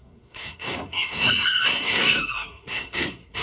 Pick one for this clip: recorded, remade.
remade